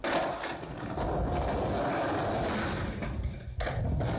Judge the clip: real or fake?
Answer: real